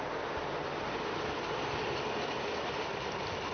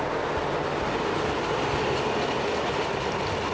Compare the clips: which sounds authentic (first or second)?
second